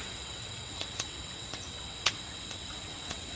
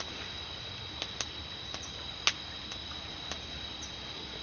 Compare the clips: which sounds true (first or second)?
second